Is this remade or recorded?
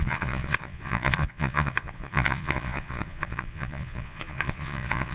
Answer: remade